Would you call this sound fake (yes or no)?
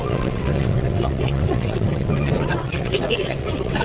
yes